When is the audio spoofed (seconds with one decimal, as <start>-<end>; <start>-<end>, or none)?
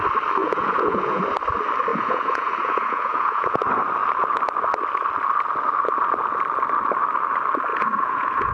0.4-1.2; 1.9-3.6; 7.7-8.5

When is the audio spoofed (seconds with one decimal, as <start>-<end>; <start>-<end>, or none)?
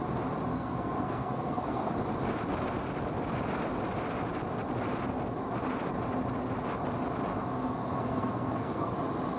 0.5-1.9; 7.3-8.9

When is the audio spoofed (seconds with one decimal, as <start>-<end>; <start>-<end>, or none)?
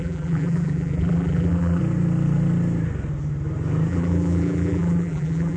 0.0-1.8; 3.9-5.6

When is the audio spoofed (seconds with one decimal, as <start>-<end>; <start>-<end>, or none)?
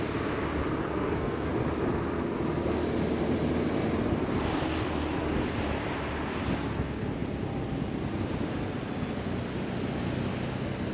0.8-1.5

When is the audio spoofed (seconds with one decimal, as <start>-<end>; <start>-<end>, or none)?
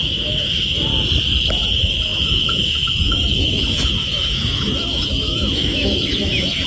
0.0-0.9; 1.5-6.7